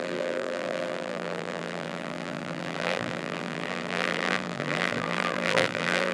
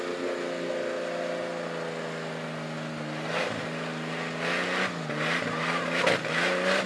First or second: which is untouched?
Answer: second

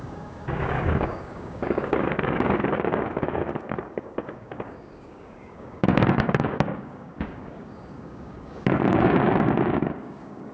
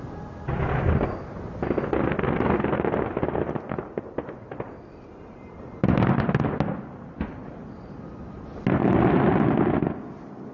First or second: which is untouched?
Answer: second